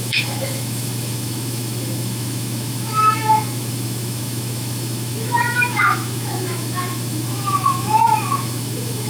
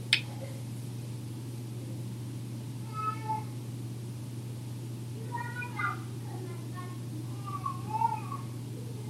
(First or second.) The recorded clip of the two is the second